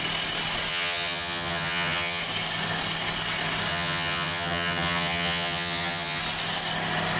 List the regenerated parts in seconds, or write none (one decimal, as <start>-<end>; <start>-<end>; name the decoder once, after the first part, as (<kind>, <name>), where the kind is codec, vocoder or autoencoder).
0.7-2.2 (vocoder, HiFi-GAN); 3.7-6.2